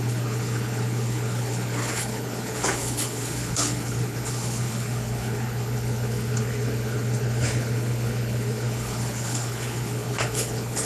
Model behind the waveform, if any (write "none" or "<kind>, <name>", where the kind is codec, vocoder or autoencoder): codec, HILCodec